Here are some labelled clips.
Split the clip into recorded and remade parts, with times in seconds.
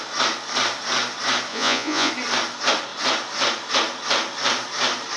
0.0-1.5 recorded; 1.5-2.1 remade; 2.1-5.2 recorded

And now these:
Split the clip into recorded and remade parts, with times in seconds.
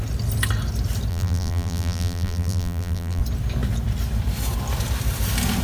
0.0-1.1 recorded; 1.1-3.2 remade; 3.2-5.6 recorded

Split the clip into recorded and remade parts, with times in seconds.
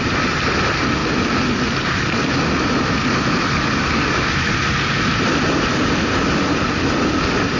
0.0-4.0 recorded; 4.0-4.5 remade; 4.5-7.6 recorded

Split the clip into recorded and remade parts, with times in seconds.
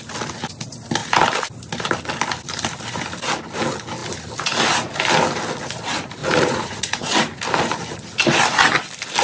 0.0-6.2 recorded; 6.2-7.2 remade; 7.2-9.2 recorded